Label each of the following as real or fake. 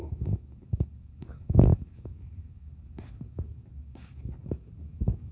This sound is fake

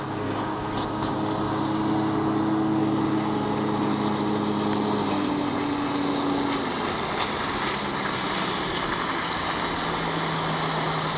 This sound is real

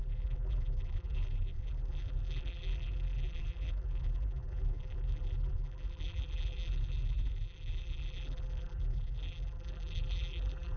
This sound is fake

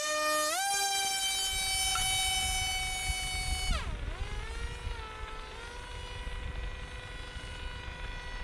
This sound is real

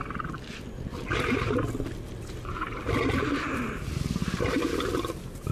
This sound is real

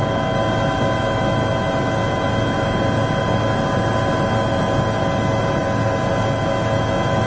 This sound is real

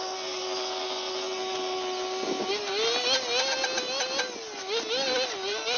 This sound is real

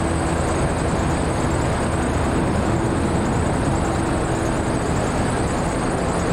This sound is real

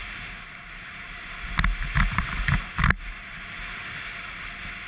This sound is real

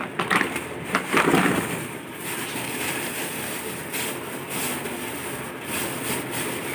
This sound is fake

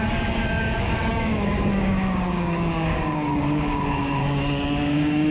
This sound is fake